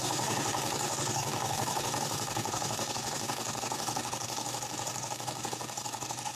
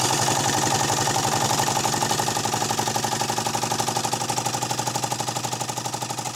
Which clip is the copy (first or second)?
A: first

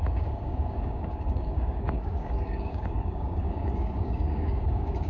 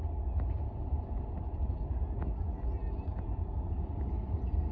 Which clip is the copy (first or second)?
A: first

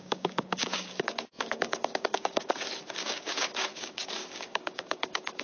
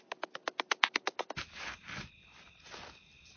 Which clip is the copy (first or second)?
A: first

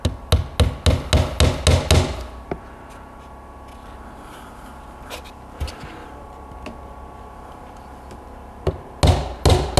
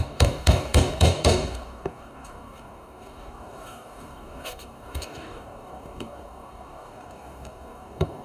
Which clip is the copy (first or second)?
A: second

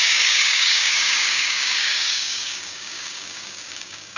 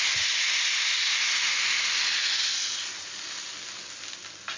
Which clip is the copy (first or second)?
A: first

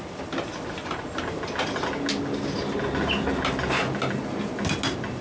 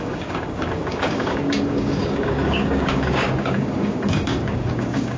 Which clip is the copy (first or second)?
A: second